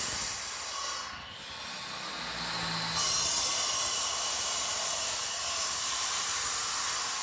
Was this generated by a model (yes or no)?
no